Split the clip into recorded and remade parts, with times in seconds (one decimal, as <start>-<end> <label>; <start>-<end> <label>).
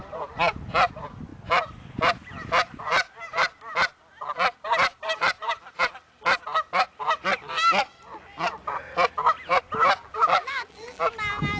0.0-10.0 recorded; 10.0-11.0 remade; 11.0-11.6 recorded